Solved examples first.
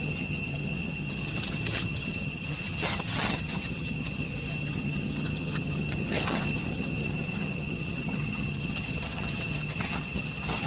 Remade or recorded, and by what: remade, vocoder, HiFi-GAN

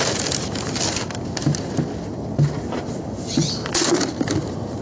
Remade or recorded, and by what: recorded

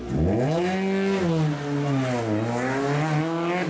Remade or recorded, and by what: recorded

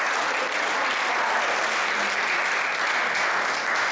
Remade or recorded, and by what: recorded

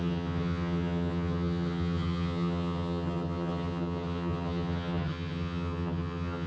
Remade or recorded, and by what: remade, vocoder, HiFi-GAN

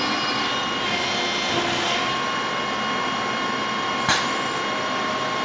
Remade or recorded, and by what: recorded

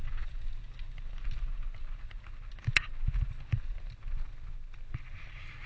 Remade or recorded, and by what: recorded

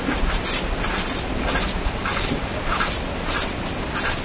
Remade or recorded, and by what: recorded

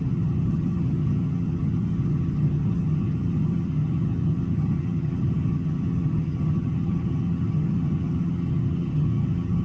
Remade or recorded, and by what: remade, vocoder, HiFi-GAN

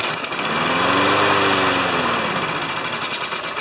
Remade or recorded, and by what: recorded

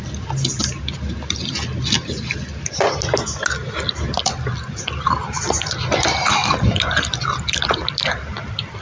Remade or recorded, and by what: recorded